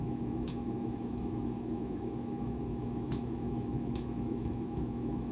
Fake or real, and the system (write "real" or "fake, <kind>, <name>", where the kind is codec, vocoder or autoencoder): fake, autoencoder, DAC-VAE